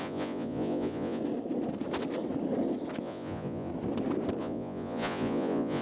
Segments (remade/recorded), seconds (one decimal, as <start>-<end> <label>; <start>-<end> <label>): 0.0-1.2 remade; 1.2-3.0 recorded; 3.0-3.7 remade; 3.7-4.4 recorded; 4.4-5.8 remade